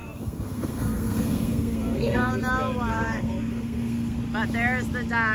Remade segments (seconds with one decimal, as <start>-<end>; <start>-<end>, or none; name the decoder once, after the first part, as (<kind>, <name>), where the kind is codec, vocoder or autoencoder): 0.0-2.3 (codec, SNAC); 2.9-4.2